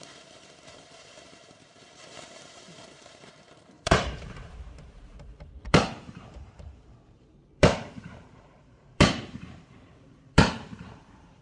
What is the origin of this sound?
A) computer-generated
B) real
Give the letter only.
A